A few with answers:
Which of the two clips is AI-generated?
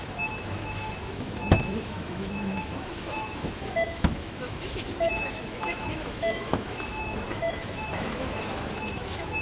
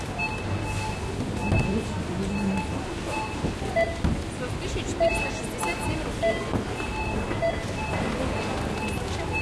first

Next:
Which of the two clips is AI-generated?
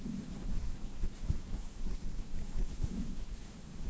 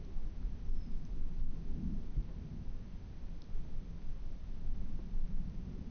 first